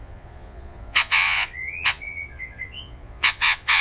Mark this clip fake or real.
fake